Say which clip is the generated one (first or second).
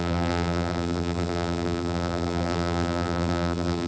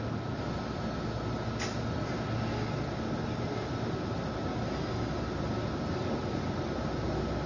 first